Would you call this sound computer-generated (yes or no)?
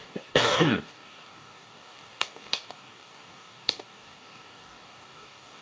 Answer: yes